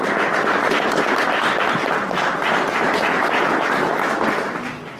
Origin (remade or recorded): recorded